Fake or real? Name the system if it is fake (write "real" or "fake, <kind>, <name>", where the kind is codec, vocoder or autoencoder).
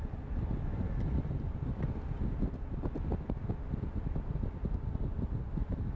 real